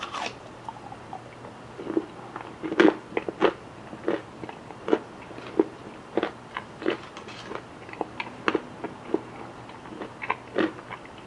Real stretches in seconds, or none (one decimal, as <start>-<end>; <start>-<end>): 0.0-11.3

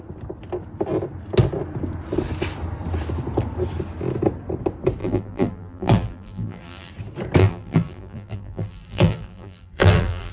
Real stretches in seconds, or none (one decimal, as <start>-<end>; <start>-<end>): 0.0-5.0; 6.9-7.4

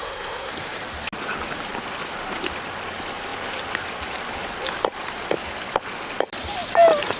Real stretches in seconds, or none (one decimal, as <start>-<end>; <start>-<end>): 0.5-7.2

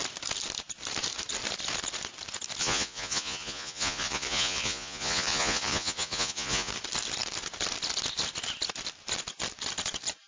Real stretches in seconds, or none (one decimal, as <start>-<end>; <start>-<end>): 0.0-2.6; 6.7-10.3